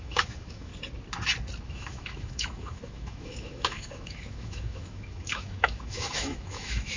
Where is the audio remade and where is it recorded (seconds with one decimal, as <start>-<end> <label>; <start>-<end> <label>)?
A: 0.0-0.7 remade; 0.7-1.6 recorded; 1.6-7.0 remade